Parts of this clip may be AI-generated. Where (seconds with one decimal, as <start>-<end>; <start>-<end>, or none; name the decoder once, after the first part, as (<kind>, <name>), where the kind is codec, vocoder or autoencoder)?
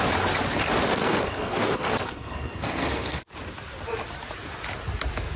1.0-3.2 (codec, SNAC)